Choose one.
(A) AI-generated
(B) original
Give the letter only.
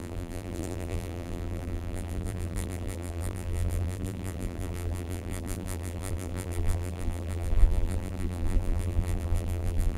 A